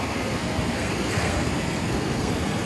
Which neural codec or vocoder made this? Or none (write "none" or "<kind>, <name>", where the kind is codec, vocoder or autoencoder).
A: codec, SNAC